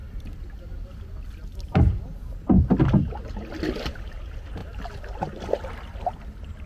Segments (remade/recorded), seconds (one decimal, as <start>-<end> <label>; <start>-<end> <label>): 0.0-6.7 recorded